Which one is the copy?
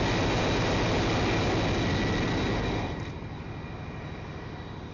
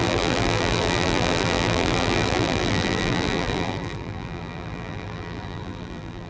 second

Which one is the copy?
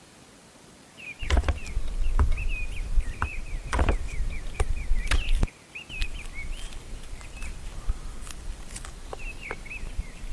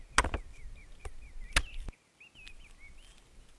first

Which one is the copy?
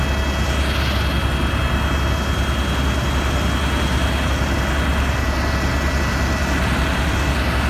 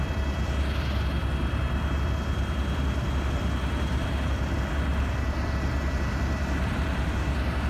second